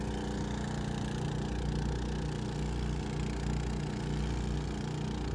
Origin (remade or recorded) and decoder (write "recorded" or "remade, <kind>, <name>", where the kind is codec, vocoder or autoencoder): recorded